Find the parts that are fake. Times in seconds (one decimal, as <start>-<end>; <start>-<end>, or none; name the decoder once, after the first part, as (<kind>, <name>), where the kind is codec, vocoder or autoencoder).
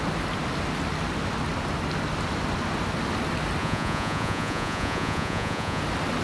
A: 3.6-5.8 (vocoder, Vocos)